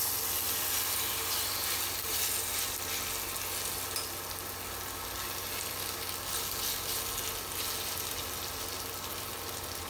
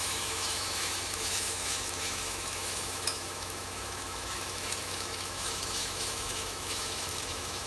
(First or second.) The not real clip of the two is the second